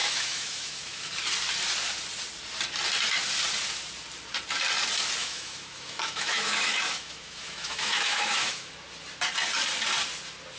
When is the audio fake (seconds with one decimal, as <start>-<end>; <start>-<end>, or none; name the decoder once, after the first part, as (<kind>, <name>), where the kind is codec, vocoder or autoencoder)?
0.0-1.1 (autoencoder, DAC-VAE); 5.2-8.7